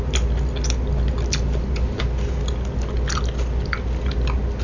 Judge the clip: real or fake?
real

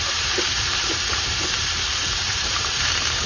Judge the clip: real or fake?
fake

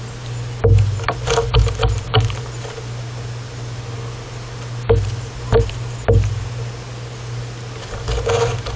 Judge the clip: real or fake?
real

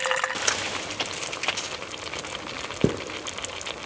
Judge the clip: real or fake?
real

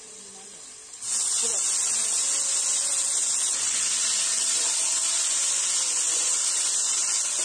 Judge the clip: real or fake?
real